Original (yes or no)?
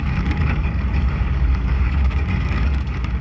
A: no